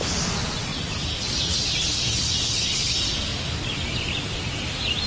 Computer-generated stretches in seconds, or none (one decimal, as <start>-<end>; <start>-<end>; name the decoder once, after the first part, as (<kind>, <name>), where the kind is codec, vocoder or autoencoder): 0.7-2.3 (vocoder, BigVGAN v2); 3.3-4.3